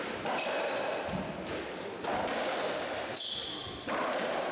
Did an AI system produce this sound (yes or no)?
no